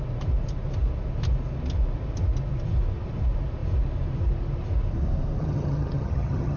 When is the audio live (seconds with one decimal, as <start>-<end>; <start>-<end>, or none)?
0.0-5.4